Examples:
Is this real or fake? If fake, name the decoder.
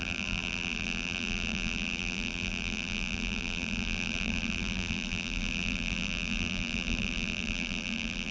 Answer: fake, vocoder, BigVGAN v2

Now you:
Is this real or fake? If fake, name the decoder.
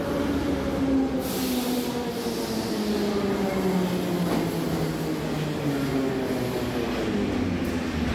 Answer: real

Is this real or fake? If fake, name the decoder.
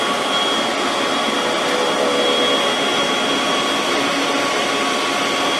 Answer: real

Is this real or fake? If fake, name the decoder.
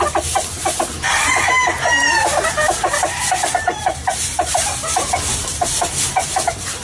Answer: fake, vocoder, BigVGAN v2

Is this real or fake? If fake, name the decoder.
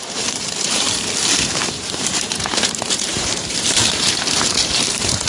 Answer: fake, vocoder, BigVGAN v2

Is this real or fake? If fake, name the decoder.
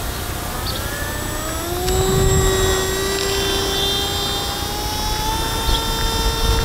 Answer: real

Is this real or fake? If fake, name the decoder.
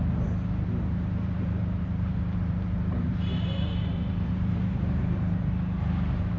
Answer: fake, vocoder, BigVGAN v2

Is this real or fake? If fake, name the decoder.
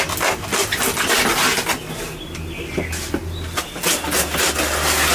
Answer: real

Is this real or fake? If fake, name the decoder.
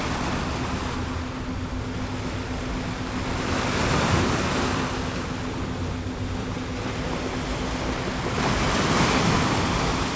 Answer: real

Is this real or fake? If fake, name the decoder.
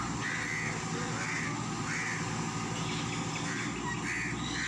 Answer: real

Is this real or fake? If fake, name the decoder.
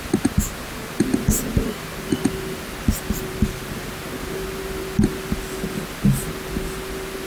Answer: real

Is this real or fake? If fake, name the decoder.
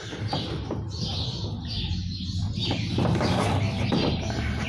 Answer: real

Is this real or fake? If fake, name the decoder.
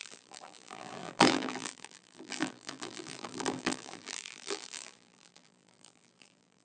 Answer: fake, vocoder, BigVGAN v2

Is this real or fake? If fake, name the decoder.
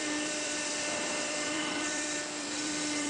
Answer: fake, vocoder, BigVGAN v2